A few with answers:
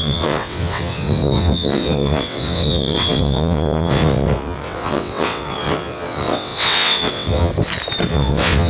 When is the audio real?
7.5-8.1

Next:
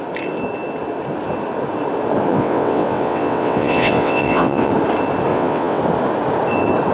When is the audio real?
0.0-2.3; 4.7-5.3; 5.8-6.9

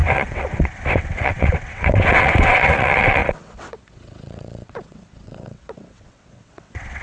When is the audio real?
none

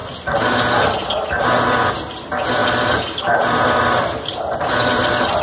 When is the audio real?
0.0-5.4

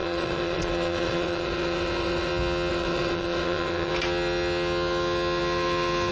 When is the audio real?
2.3-2.7; 3.9-6.1

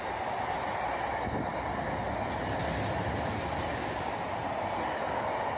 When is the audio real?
0.0-5.6

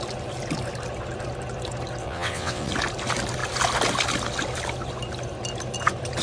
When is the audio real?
0.0-2.0; 2.7-6.2

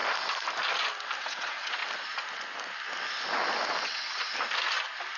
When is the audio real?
0.0-1.2; 1.8-3.8; 4.3-5.2